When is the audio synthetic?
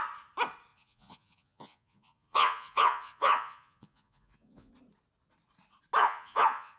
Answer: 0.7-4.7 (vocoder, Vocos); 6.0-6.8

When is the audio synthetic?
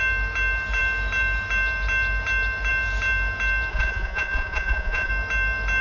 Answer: 3.7-5.1 (vocoder, Vocos)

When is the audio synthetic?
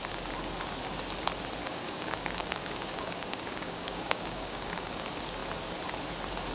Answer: 1.6-5.0 (codec, DAC)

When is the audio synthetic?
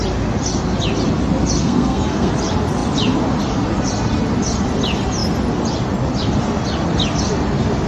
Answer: 1.6-2.3 (codec, SNAC)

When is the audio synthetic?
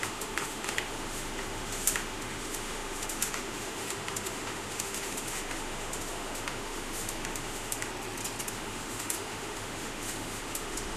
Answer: 0.0-7.9 (autoencoder, DAC-VAE); 8.5-11.0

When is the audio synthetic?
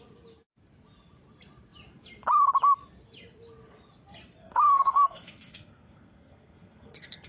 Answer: 4.4-7.3 (codec, SNAC)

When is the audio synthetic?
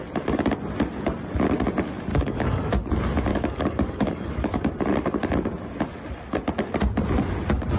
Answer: 2.1-2.7 (codec, DAC); 3.3-4.7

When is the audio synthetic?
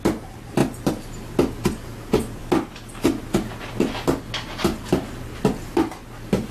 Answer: 0.6-1.1 (vocoder, BigVGAN v2)